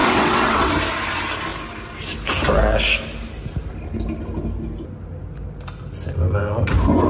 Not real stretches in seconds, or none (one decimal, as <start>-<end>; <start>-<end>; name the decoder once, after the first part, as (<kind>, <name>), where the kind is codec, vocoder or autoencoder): 0.0-0.7 (vocoder, WaveNeXt)